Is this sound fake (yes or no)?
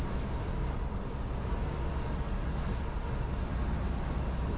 no